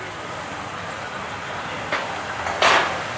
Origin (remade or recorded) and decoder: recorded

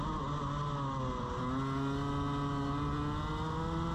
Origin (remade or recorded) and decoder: recorded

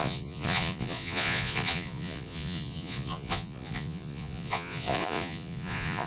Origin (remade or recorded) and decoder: remade, vocoder, Vocos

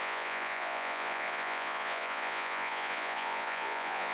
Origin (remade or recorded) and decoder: remade, vocoder, Vocos